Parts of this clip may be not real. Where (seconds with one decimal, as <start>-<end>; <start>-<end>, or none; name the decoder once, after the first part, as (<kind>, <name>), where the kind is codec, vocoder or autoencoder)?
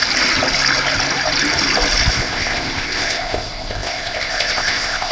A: 2.1-5.1 (codec, ZipCodec)